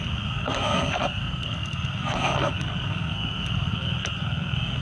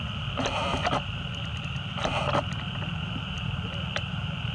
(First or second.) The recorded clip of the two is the second